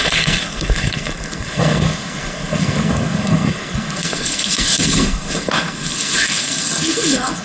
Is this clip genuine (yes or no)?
no